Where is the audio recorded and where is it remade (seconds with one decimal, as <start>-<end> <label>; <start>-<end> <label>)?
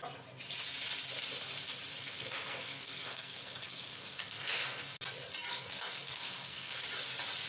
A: 0.0-1.9 recorded; 1.9-5.0 remade; 5.0-5.5 recorded; 5.5-6.8 remade; 6.8-7.5 recorded